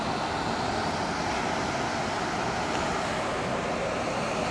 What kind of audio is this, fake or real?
real